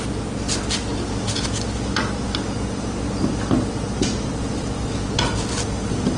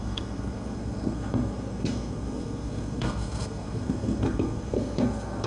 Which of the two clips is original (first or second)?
first